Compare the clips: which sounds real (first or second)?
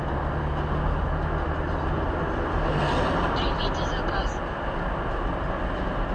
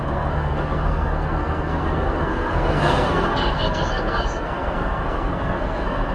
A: first